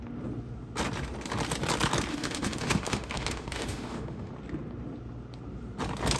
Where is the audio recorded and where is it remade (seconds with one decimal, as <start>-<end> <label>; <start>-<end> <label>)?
0.0-2.1 recorded; 2.1-4.3 remade; 4.3-6.2 recorded